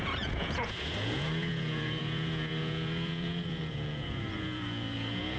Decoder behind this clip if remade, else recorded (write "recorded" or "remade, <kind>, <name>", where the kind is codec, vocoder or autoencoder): remade, vocoder, Vocos